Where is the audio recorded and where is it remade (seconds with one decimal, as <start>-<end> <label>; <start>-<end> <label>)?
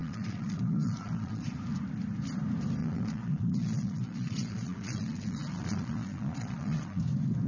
0.0-1.4 remade; 1.4-2.8 recorded; 2.8-7.0 remade; 7.0-7.5 recorded